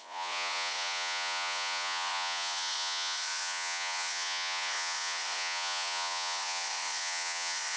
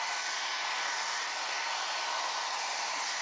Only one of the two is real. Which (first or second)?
second